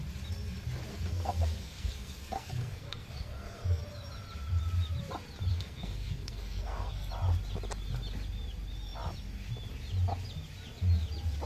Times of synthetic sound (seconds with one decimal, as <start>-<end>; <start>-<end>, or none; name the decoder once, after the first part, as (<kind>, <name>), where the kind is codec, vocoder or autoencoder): 0.9-3.8 (codec, SNAC); 5.5-7.1